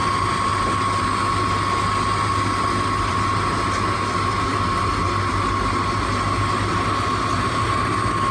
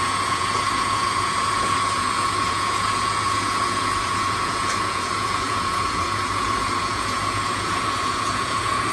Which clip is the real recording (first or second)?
first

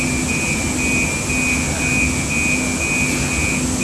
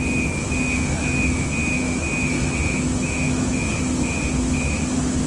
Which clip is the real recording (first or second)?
first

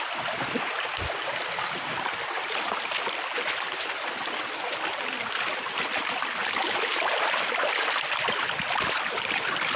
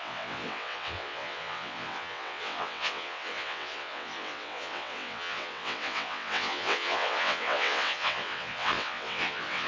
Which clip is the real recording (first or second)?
first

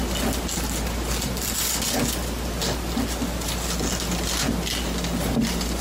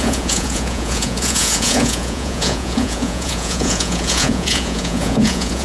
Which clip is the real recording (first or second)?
first